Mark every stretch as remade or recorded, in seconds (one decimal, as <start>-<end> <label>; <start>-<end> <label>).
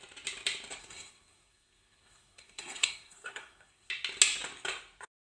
0.0-0.8 recorded; 0.8-3.9 remade; 3.9-5.2 recorded